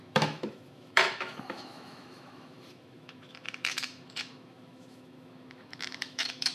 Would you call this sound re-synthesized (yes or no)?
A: yes